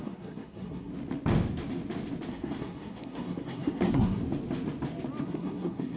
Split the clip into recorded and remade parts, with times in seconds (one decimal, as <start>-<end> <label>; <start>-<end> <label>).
0.0-0.9 remade; 0.9-2.3 recorded; 2.3-4.2 remade; 4.2-5.2 recorded; 5.2-6.0 remade